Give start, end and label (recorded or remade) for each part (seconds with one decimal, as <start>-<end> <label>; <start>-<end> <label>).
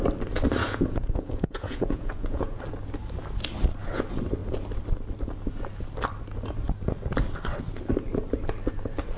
0.0-0.6 recorded; 0.6-2.6 remade; 2.6-9.2 recorded